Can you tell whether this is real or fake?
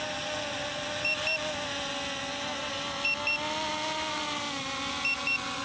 real